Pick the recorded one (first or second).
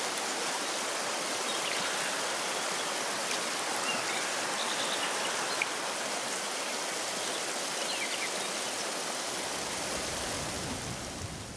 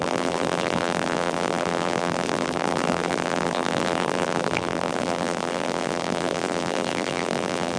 first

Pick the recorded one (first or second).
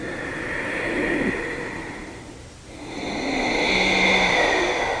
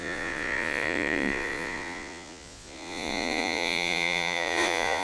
first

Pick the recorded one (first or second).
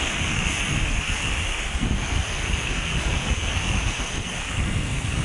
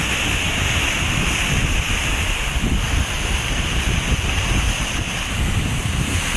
second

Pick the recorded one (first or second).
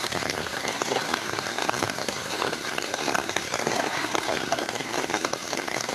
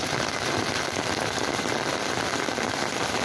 second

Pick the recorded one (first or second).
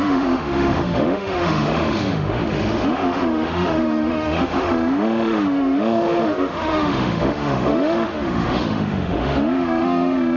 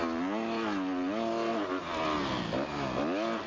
second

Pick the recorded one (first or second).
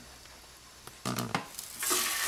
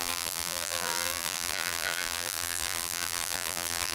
first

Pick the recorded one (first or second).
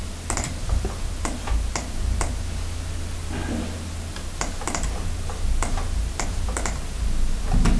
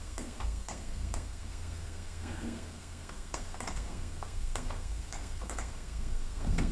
first